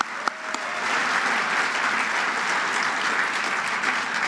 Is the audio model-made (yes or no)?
no